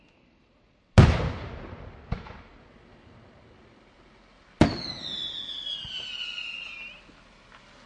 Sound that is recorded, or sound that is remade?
recorded